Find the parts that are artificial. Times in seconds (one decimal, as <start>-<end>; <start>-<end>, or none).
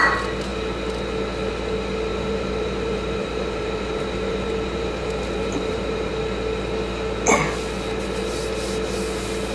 2.1-6.1